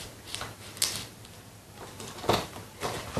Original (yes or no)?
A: yes